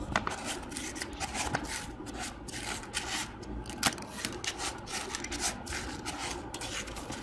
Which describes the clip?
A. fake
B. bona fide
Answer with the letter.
B